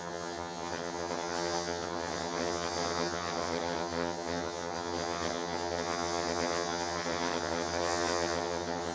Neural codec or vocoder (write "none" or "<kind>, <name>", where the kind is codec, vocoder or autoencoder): vocoder, HiFi-GAN